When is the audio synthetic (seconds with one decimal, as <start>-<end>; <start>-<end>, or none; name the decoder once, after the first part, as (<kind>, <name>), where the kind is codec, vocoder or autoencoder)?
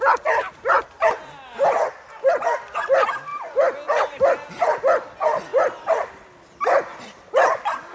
3.3-4.5 (vocoder, BigVGAN v2); 5.5-7.4